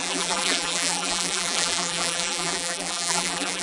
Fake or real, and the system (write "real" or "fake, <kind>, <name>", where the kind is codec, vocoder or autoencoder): fake, vocoder, BigVGAN v2